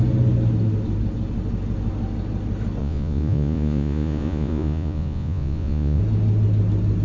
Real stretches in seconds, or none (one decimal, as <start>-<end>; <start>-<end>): 0.0-2.8; 6.0-7.0